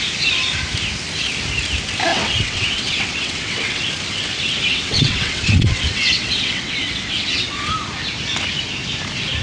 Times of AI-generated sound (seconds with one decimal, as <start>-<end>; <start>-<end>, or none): 2.1-3.8; 4.7-7.7